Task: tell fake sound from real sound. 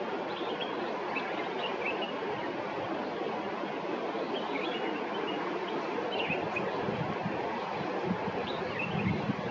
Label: real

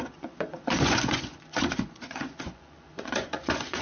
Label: fake